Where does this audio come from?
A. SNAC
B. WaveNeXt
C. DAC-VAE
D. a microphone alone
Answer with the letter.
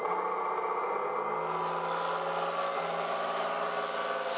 D